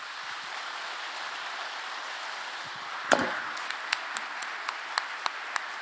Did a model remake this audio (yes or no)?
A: no